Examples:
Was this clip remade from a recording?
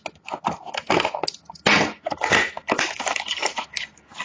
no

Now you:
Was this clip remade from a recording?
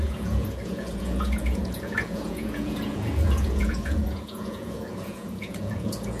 yes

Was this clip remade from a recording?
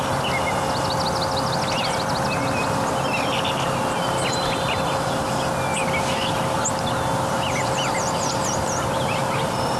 no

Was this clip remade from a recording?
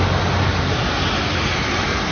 no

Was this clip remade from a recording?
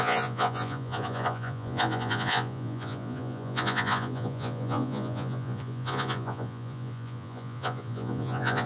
yes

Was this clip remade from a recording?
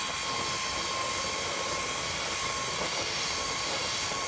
no